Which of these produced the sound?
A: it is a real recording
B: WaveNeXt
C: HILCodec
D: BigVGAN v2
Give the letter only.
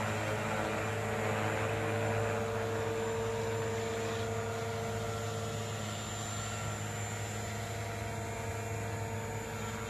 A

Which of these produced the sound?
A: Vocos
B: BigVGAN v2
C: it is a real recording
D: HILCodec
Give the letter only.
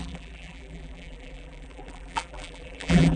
B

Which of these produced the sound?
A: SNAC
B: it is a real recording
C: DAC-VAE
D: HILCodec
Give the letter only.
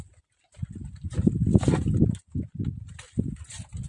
B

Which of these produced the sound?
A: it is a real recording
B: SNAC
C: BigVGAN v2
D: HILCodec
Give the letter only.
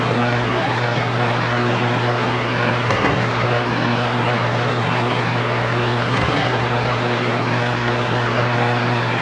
B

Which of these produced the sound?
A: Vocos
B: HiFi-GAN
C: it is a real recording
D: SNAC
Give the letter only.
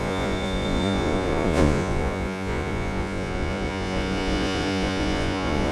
A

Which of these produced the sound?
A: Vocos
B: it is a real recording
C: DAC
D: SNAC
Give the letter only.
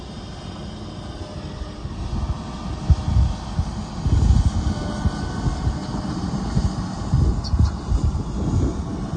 B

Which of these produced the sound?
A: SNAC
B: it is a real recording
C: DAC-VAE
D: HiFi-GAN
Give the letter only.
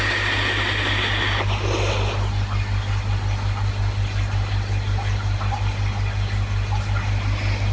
B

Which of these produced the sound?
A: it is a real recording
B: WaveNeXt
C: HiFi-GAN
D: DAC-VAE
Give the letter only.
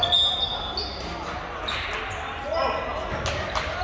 A